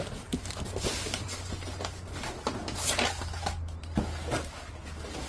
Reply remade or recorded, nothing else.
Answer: recorded